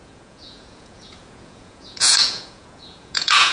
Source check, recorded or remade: remade